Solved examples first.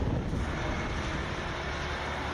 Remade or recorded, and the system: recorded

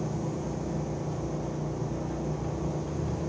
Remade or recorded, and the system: recorded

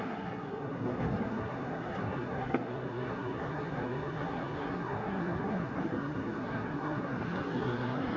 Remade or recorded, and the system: remade, codec, SNAC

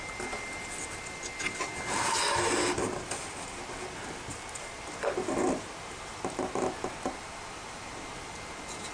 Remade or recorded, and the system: recorded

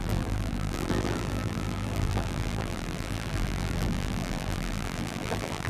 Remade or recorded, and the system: remade, vocoder, BigVGAN v2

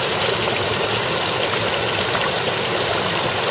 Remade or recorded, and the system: recorded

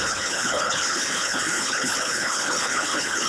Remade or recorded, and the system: remade, codec, HILCodec